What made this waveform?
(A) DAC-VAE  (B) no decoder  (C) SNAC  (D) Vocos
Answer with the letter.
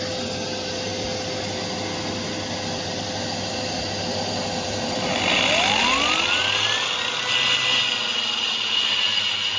B